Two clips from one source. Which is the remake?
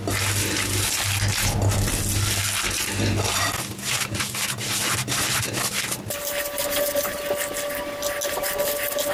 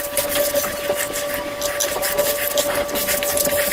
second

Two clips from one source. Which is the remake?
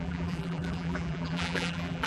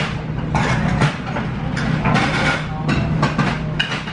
first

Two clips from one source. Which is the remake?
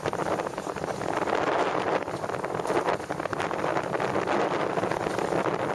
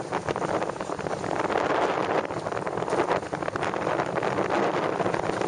second